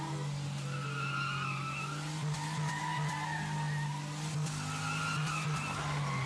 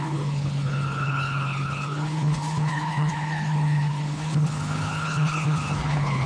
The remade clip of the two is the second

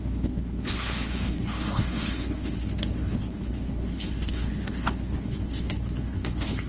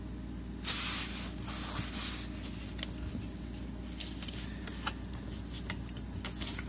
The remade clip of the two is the first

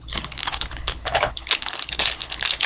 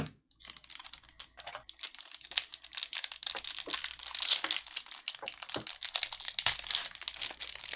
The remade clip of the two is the first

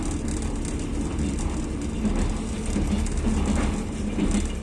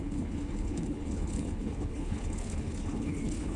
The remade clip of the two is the second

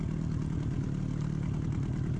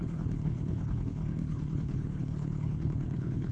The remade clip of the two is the second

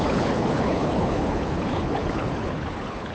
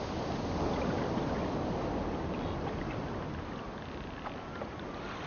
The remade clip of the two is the first